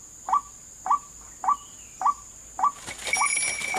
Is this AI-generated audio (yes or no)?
no